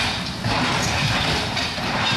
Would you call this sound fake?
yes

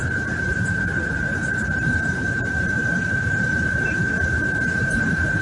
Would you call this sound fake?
no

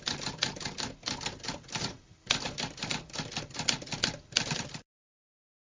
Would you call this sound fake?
yes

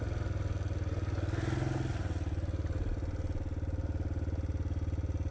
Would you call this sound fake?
no